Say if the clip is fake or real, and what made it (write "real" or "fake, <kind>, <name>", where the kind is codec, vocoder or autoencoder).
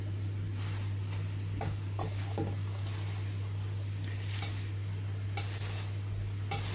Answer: real